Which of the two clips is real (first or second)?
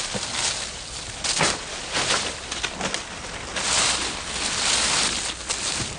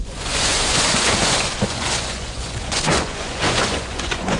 first